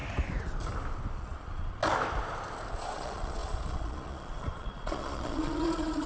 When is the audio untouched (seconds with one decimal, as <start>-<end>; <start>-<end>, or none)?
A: 0.0-1.1; 1.8-2.7